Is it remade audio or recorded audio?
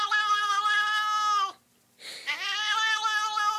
recorded